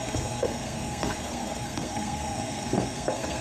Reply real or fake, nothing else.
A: fake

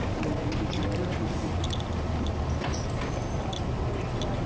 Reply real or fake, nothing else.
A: real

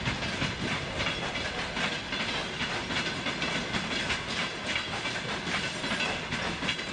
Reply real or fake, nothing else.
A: real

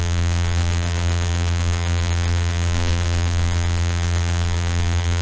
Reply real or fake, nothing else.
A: fake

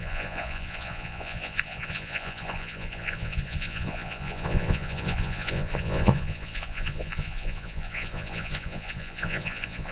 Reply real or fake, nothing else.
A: fake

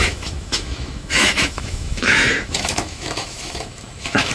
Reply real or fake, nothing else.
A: fake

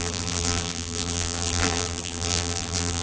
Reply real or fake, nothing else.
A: fake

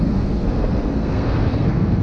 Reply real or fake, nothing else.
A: fake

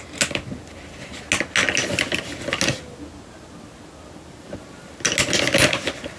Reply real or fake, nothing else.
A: real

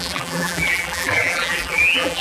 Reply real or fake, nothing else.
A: fake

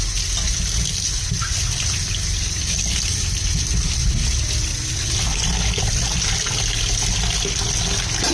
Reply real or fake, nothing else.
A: real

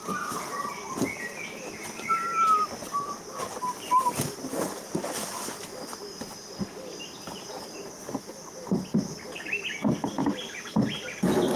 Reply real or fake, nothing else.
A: real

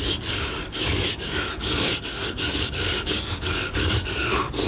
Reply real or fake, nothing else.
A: fake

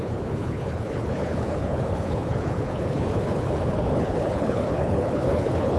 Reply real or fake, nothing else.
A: fake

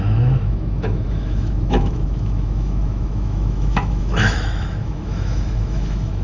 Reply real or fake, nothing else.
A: fake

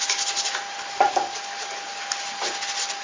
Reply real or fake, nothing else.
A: real